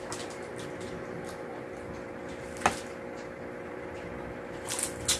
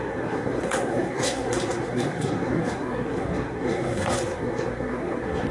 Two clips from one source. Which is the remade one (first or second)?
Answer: second